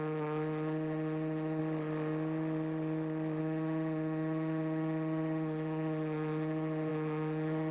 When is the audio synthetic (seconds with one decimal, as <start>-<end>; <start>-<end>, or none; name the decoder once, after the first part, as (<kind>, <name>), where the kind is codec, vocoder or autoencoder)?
0.0-1.6 (autoencoder, DAC-VAE); 3.4-7.7